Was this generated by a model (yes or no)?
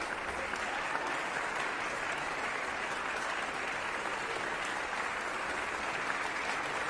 no